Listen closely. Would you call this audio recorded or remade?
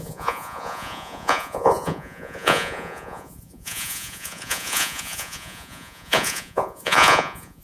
remade